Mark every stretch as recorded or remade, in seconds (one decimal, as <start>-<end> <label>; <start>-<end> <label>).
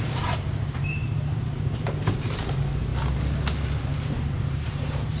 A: 0.0-2.9 remade; 2.9-3.6 recorded; 3.6-5.2 remade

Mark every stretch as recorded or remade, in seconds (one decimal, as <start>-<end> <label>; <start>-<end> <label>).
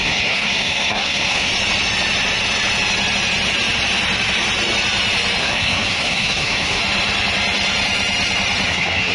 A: 0.0-1.5 remade; 1.5-5.4 recorded; 5.4-6.8 remade; 6.8-8.7 recorded; 8.7-9.1 remade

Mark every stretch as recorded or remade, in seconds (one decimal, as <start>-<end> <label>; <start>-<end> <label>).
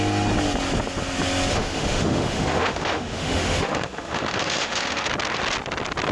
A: 0.0-1.5 recorded; 1.5-5.1 remade; 5.1-6.1 recorded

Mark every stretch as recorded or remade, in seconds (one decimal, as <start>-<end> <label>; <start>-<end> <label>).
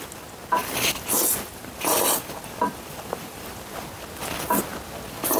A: 0.0-0.6 recorded; 0.6-3.8 remade; 3.8-5.4 recorded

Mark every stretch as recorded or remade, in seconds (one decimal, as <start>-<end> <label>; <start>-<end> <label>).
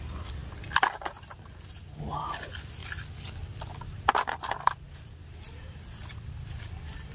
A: 0.0-7.1 recorded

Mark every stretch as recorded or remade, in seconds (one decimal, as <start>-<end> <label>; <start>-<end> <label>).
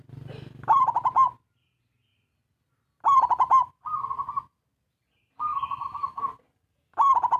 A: 0.0-5.5 recorded; 5.5-6.2 remade; 6.2-7.4 recorded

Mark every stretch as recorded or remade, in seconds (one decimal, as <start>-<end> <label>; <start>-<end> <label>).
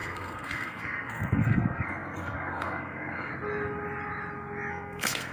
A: 0.0-3.3 remade; 3.3-4.7 recorded; 4.7-5.3 remade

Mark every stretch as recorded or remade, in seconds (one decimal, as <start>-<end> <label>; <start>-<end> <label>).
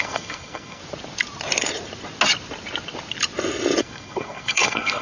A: 0.0-0.8 remade; 0.8-3.8 recorded; 3.8-5.0 remade